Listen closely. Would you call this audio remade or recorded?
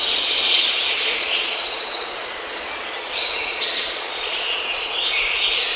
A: remade